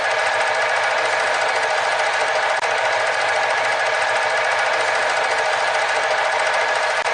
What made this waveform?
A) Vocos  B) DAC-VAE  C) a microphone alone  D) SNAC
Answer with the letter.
C